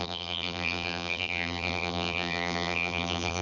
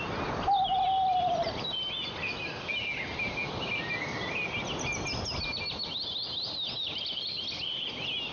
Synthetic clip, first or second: first